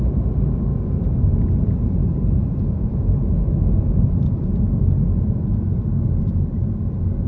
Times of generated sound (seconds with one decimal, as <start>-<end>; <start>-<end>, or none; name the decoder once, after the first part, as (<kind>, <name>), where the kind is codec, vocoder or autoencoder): 2.0-2.6 (vocoder, BigVGAN v2)